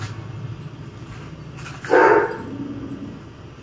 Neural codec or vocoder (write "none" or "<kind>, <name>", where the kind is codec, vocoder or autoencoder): none